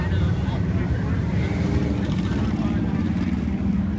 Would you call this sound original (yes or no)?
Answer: yes